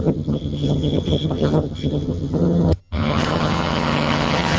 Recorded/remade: remade